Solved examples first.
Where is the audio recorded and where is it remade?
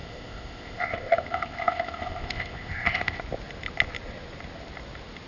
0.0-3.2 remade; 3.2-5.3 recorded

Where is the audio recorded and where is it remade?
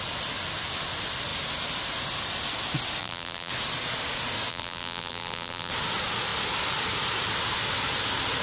0.0-3.0 recorded; 3.0-3.5 remade; 3.5-4.5 recorded; 4.5-5.7 remade; 5.7-8.4 recorded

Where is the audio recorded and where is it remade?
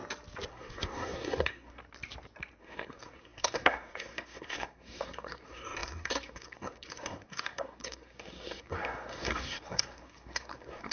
0.0-0.5 recorded; 0.5-1.8 remade; 1.8-2.6 recorded; 2.6-10.9 remade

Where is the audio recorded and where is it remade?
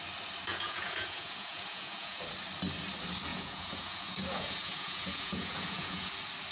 0.0-0.5 recorded; 0.5-2.2 remade; 2.2-3.3 recorded; 3.3-6.1 remade; 6.1-6.5 recorded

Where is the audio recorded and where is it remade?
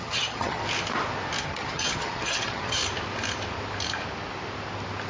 0.0-0.6 remade; 0.6-1.4 recorded; 1.4-2.8 remade; 2.8-5.1 recorded